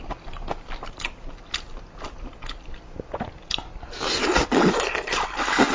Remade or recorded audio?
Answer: recorded